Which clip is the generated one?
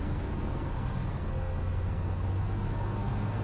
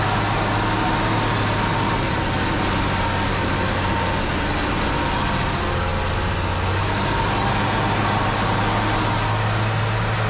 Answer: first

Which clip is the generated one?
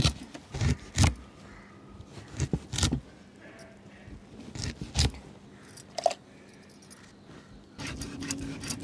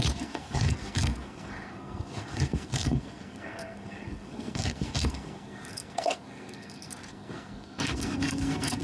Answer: second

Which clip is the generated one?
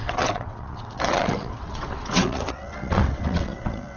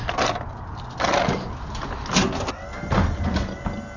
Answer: first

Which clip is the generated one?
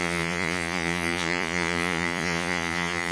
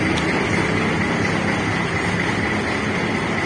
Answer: first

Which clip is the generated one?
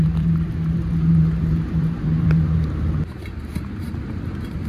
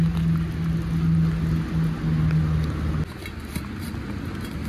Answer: first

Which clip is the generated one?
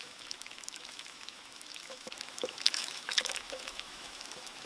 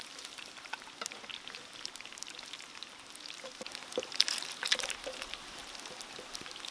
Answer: first